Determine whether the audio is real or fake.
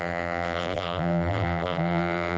fake